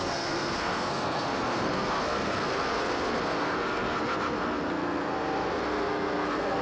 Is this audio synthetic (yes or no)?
yes